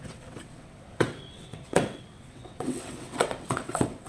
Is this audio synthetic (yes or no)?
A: yes